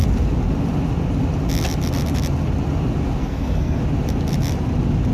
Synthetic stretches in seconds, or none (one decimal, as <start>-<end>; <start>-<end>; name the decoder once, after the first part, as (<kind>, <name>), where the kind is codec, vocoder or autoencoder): 3.2-3.8 (codec, SNAC)